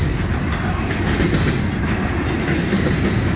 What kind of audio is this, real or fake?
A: real